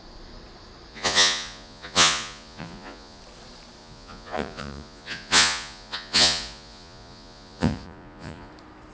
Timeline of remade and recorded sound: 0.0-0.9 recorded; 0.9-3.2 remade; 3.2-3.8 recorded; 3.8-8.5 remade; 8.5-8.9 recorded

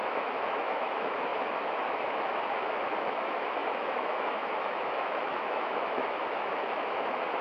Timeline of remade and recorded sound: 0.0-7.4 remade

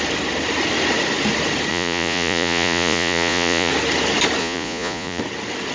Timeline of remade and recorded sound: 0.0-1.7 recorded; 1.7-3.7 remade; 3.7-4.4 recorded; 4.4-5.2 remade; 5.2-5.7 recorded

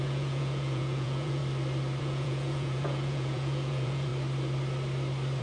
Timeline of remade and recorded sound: 0.0-1.4 remade; 1.4-2.0 recorded; 2.0-4.1 remade; 4.1-5.4 recorded

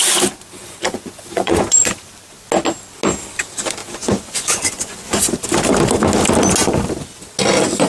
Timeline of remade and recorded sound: 0.0-0.6 recorded; 0.6-2.1 remade; 2.1-3.8 recorded; 3.8-5.3 remade; 5.3-7.9 recorded

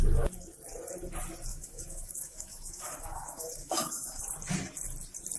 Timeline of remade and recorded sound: 0.0-1.5 recorded; 1.5-4.2 remade; 4.2-5.4 recorded

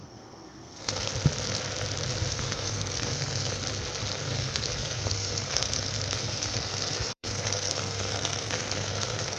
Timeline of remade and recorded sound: 0.0-1.1 remade; 1.1-2.3 recorded; 2.3-3.6 remade; 3.6-4.2 recorded; 4.2-9.4 remade